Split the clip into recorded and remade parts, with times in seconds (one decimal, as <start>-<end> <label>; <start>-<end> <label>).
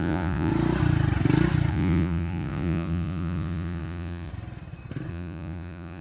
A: 0.0-0.5 remade; 0.5-1.7 recorded; 1.7-4.3 remade; 4.3-5.1 recorded; 5.1-6.0 remade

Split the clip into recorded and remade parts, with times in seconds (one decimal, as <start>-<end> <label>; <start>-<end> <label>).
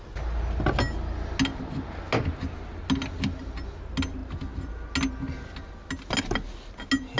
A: 0.0-7.2 recorded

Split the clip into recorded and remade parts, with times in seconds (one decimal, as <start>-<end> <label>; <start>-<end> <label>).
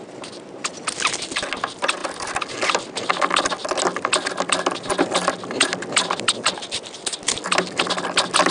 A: 0.0-8.5 recorded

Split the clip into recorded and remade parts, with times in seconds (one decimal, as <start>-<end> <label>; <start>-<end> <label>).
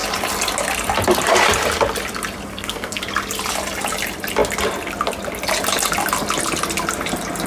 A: 0.0-2.5 recorded; 2.5-3.0 remade; 3.0-7.5 recorded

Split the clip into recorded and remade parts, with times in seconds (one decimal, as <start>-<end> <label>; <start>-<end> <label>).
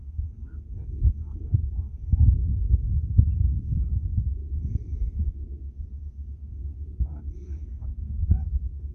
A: 0.0-8.9 remade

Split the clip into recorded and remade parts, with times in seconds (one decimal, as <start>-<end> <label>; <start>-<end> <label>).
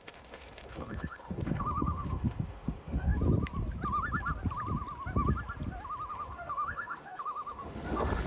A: 0.0-3.1 remade; 3.1-6.1 recorded; 6.1-8.3 remade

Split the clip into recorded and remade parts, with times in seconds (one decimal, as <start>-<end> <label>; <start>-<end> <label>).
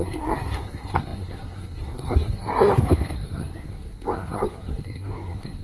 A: 0.0-5.6 remade